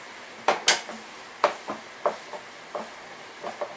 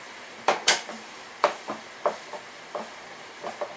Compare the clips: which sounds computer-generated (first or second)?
second